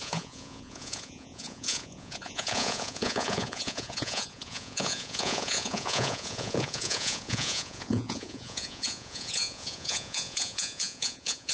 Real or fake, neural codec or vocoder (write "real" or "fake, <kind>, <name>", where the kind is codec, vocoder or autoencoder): fake, vocoder, Vocos